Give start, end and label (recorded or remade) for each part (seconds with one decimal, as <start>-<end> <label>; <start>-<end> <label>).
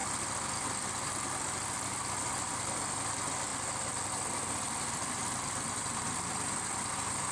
0.0-7.3 recorded